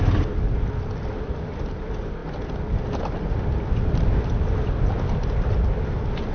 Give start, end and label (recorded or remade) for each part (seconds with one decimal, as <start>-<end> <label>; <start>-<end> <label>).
0.0-6.3 recorded